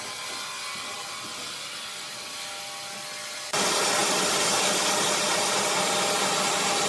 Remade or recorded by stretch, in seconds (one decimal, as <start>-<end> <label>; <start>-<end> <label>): 0.0-6.9 recorded